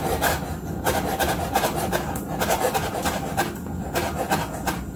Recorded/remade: recorded